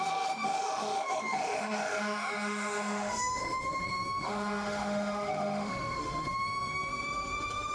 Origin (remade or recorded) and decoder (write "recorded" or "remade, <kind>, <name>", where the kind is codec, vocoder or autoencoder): remade, autoencoder, DAC-VAE